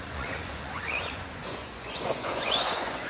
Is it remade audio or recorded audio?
remade